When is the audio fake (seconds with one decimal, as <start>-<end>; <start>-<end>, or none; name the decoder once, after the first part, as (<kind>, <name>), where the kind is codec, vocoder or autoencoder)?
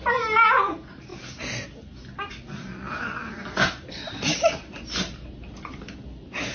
none